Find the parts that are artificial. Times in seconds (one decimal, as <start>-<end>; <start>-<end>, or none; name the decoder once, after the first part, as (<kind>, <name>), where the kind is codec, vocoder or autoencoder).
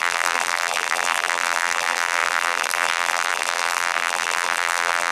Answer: 0.0-5.1 (vocoder, BigVGAN v2)